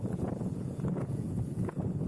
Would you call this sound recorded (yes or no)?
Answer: no